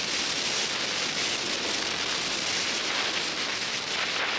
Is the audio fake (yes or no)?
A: no